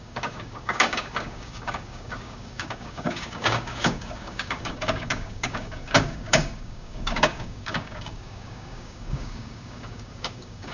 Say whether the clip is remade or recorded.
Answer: remade